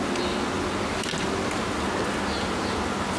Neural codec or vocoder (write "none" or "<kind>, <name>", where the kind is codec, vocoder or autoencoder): none